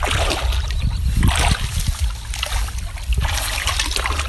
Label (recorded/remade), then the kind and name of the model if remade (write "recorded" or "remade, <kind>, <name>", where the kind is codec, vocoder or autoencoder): recorded